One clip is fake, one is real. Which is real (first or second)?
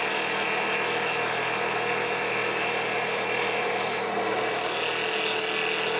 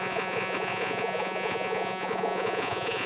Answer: first